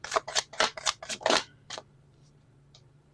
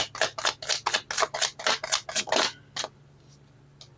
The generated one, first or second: first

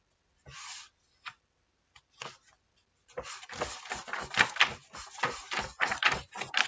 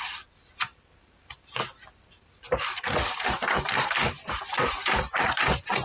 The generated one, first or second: second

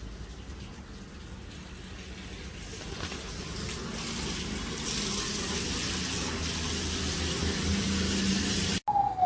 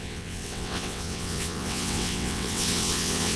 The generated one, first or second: second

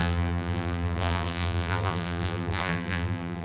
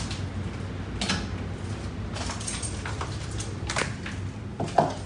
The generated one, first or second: first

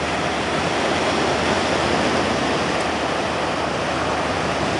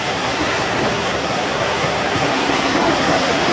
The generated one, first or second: second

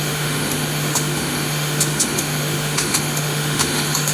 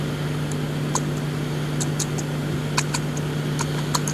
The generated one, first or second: first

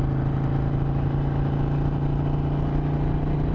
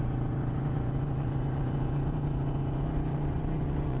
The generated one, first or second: second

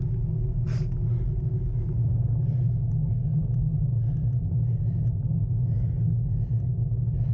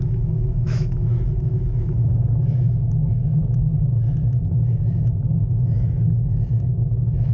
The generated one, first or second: second